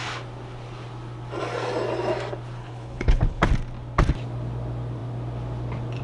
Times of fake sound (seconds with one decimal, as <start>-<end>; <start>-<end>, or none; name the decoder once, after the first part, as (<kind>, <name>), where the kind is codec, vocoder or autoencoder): 2.6-3.5 (codec, HILCodec)